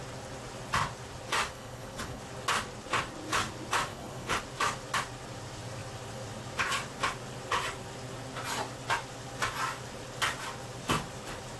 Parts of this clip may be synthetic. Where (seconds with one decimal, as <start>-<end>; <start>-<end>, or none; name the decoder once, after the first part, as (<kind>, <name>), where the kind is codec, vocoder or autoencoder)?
1.5-2.2 (codec, HILCodec); 3.9-4.4